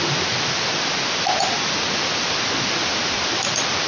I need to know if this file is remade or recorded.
recorded